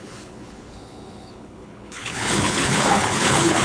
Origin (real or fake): fake